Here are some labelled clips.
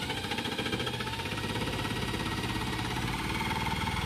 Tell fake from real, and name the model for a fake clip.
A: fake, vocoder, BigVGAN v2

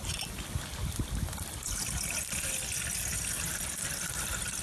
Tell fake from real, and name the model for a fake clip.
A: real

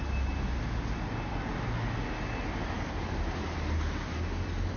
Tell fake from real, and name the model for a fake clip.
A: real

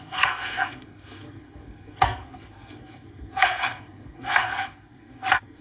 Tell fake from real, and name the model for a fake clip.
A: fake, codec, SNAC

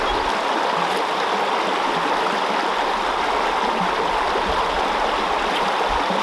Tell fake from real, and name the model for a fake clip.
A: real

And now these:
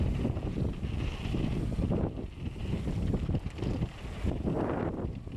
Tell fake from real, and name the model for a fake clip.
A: real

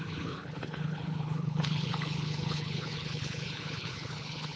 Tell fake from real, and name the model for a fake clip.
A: fake, codec, HILCodec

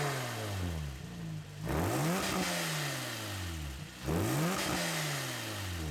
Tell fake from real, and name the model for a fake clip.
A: real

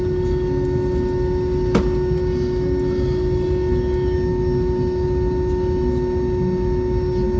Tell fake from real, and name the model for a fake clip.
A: real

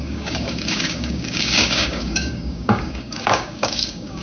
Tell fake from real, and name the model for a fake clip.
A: fake, codec, DAC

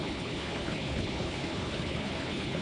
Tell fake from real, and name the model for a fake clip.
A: fake, codec, HILCodec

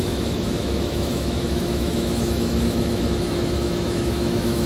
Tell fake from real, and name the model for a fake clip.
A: fake, autoencoder, DAC-VAE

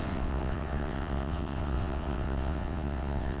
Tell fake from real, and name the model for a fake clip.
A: fake, vocoder, WaveNeXt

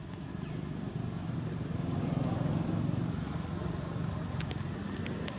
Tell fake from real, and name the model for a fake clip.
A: real